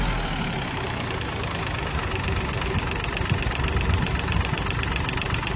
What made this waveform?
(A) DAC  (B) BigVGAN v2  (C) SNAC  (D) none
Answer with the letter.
B